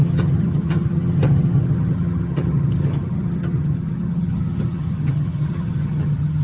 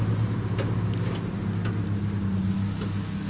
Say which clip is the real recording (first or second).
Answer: second